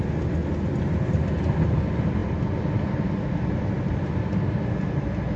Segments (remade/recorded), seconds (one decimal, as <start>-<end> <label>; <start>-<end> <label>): 0.0-5.4 recorded